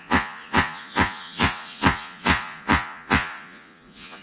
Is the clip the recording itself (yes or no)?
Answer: no